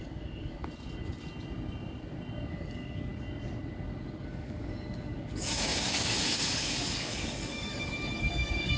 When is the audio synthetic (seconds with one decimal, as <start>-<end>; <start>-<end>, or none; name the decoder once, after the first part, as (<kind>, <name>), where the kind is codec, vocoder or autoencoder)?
0.0-0.6 (codec, DAC); 2.5-3.1; 4.2-7.7; 8.3-8.8